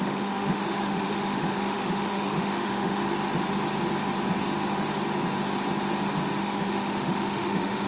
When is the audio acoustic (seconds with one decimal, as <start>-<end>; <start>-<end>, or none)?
3.0-6.4

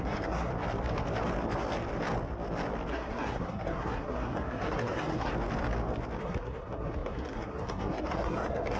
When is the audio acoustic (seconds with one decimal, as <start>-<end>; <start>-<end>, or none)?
0.5-2.9; 5.3-6.2

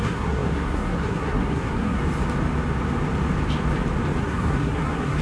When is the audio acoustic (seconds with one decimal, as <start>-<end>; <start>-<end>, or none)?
2.0-4.2

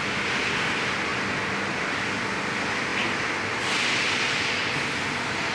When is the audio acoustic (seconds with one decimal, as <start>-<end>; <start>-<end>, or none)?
0.0-5.5

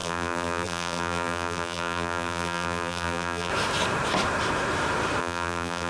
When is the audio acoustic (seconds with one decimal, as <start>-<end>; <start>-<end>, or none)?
3.5-5.2

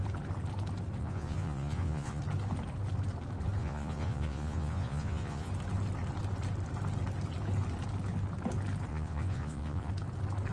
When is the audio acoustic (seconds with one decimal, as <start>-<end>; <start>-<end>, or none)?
0.0-1.0; 2.2-3.6; 5.5-8.9; 9.9-10.5

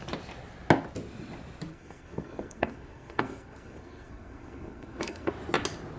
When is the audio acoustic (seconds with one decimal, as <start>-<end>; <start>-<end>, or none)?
0.0-1.7; 5.3-6.0

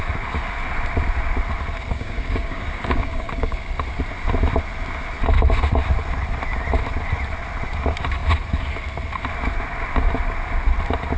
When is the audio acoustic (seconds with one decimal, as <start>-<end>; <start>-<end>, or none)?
0.0-1.9; 3.6-11.2